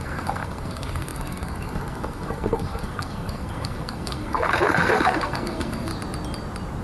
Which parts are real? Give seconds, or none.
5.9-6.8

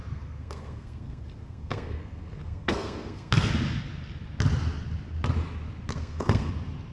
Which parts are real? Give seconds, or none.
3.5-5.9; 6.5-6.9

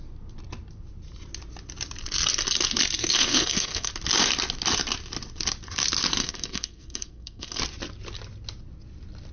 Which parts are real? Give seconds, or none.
0.0-3.0; 3.9-6.2; 7.6-9.3